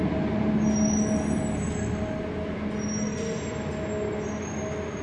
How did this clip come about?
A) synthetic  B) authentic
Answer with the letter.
B